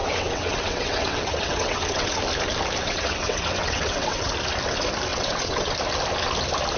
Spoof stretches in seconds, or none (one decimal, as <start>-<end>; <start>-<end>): 0.0-2.2; 2.8-4.3; 5.1-5.7

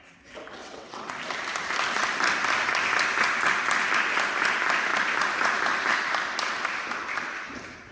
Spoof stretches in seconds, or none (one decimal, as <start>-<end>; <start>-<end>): 0.6-1.1